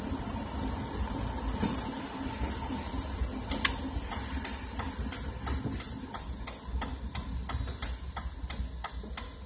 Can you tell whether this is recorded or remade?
recorded